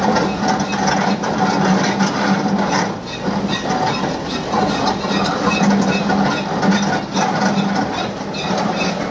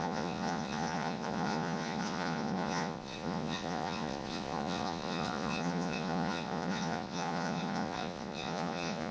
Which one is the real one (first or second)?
first